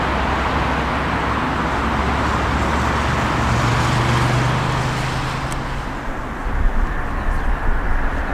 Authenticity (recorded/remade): recorded